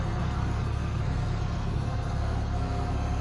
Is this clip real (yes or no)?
no